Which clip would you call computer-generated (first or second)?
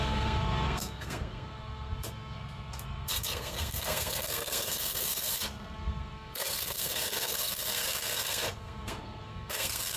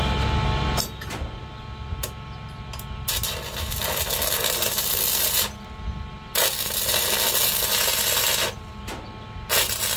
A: first